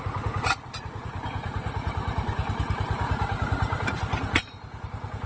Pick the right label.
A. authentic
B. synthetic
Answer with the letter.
B